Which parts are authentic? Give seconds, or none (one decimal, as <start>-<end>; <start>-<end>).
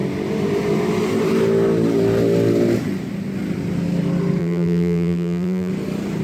0.0-4.4; 5.7-6.2